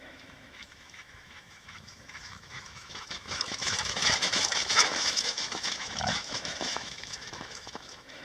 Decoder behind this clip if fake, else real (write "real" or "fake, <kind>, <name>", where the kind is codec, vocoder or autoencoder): fake, autoencoder, DAC-VAE